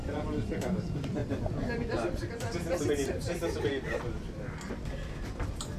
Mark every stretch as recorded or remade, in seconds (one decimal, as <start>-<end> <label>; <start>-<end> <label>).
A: 0.0-1.2 remade; 1.2-4.7 recorded; 4.7-5.8 remade